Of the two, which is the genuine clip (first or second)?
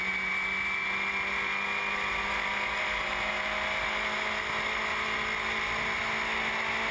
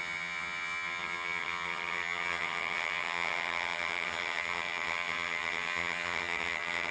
first